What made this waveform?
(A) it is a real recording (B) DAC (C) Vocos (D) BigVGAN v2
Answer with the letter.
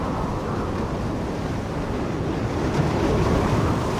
A